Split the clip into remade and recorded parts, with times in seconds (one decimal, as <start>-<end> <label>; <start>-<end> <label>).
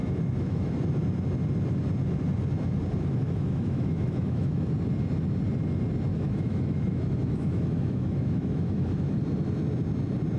0.0-0.7 remade; 0.7-3.2 recorded; 3.2-4.7 remade; 4.7-6.1 recorded; 6.1-9.2 remade; 9.2-10.4 recorded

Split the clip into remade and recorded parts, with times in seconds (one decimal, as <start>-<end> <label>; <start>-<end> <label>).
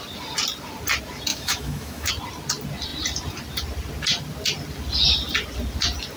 0.0-1.3 recorded; 1.3-2.1 remade; 2.1-6.2 recorded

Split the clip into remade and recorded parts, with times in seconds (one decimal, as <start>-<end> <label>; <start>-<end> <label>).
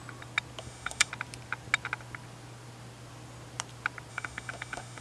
0.0-0.6 recorded; 0.6-1.1 remade; 1.1-4.1 recorded; 4.1-5.0 remade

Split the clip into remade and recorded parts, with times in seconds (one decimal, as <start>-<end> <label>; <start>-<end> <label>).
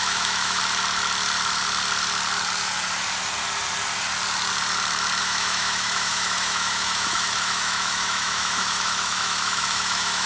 0.0-0.6 remade; 0.6-5.2 recorded; 5.2-10.3 remade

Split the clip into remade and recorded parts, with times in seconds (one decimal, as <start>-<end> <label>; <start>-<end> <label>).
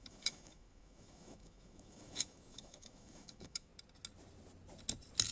0.0-3.7 remade; 3.7-5.3 recorded